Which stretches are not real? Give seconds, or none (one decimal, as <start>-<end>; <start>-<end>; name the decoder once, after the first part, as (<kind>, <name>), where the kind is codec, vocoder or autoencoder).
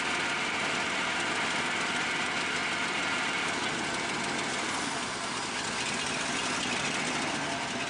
none